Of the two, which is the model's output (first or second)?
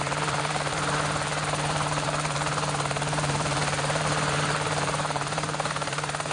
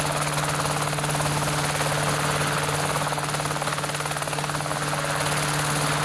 first